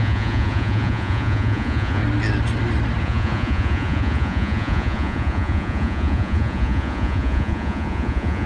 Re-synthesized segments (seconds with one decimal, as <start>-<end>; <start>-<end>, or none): 0.0-2.0; 3.0-8.5